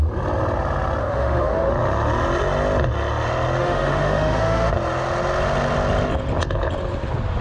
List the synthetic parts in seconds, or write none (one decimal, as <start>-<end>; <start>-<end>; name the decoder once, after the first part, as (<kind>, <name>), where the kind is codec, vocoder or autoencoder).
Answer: 1.0-1.7 (autoencoder, DAC-VAE); 3.6-4.7

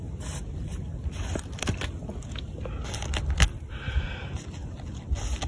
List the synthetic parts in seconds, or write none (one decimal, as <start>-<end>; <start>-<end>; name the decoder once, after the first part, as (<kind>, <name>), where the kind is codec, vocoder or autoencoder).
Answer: none

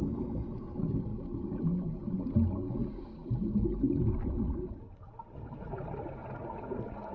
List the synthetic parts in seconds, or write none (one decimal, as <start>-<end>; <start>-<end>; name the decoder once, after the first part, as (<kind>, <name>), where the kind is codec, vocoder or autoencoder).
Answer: 6.2-7.1 (vocoder, BigVGAN v2)

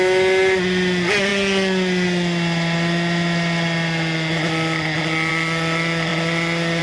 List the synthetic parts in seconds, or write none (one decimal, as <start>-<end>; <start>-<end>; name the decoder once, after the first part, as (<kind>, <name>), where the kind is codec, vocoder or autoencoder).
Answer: none

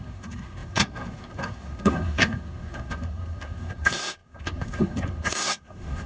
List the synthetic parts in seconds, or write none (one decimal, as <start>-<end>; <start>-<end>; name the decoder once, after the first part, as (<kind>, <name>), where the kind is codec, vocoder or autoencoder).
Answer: 0.0-6.1 (codec, SNAC)

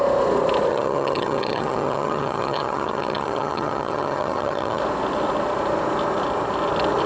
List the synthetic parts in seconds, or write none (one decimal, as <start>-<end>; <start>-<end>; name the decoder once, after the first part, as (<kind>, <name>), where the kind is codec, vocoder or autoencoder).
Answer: 0.7-4.8 (vocoder, HiFi-GAN)

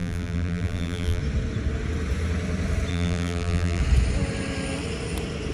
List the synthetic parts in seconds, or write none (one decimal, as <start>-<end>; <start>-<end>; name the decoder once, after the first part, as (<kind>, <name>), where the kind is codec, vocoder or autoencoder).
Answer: 0.0-1.2 (vocoder, BigVGAN v2); 2.9-3.8

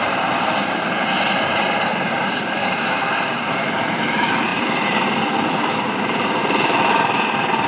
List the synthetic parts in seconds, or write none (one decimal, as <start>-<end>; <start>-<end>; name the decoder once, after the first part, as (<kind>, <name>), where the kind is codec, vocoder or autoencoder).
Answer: 0.0-7.7 (vocoder, BigVGAN v2)